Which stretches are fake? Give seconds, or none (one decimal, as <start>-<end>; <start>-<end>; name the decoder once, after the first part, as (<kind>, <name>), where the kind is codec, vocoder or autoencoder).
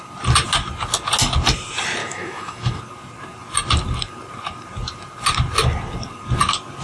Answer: 2.0-2.8 (autoencoder, DAC-VAE)